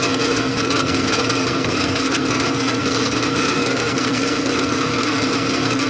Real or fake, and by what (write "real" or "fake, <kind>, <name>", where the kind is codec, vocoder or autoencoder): fake, codec, SNAC